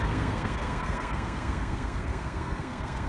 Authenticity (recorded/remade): remade